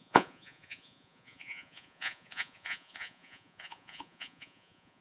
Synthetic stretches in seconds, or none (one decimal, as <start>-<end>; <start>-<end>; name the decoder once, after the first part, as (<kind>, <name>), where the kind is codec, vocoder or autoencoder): 0.0-5.0 (vocoder, Vocos)